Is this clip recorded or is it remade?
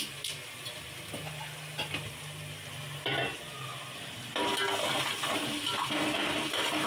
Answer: recorded